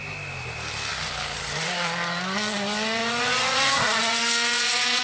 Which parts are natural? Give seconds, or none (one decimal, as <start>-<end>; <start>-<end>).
0.0-3.0